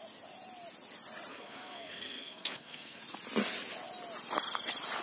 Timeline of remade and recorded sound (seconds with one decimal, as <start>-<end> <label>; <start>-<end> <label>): 0.0-1.3 recorded; 1.3-3.0 remade; 3.0-5.0 recorded